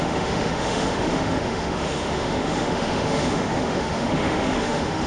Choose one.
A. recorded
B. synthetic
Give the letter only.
B